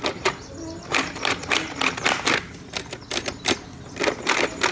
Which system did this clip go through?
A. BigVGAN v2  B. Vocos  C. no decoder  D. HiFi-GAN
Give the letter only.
C